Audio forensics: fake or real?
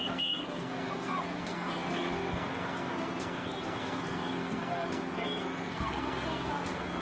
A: fake